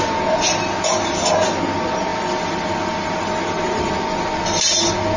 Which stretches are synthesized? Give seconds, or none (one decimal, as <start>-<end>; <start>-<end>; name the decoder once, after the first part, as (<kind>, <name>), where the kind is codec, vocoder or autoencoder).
none